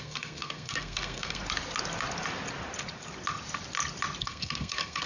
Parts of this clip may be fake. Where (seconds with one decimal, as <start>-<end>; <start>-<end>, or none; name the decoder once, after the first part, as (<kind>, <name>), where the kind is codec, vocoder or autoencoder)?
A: 0.0-1.4 (codec, SNAC); 4.2-5.1